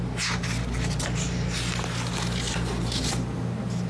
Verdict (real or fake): real